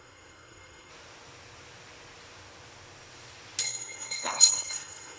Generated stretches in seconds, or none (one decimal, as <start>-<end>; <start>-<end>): 0.0-0.9; 3.6-5.2